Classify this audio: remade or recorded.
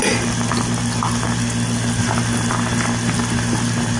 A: recorded